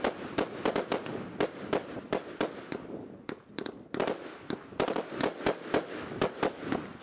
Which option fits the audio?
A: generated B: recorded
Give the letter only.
B